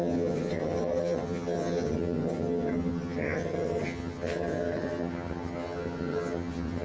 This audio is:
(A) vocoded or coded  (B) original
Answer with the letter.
A